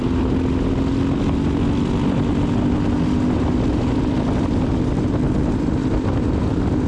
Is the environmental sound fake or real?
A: real